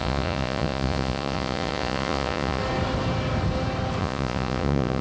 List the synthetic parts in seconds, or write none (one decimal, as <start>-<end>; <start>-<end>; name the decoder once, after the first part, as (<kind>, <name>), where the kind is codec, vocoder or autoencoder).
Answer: 0.0-2.6 (vocoder, Vocos); 4.0-5.0